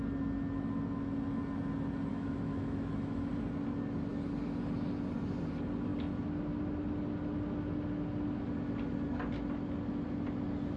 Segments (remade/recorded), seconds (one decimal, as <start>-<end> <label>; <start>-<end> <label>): 0.0-2.1 recorded; 2.1-3.3 remade; 3.3-10.8 recorded